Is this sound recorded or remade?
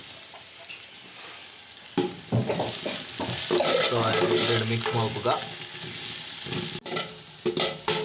recorded